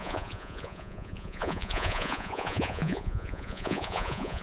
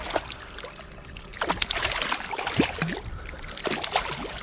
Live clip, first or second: second